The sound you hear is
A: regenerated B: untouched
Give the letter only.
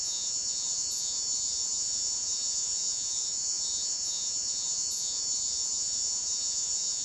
A